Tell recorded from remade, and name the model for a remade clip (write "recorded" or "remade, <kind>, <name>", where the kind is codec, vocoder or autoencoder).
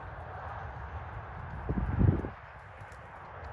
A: recorded